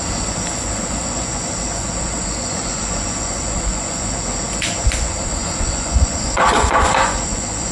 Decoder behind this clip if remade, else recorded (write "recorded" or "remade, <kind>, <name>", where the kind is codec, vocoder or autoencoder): remade, vocoder, Vocos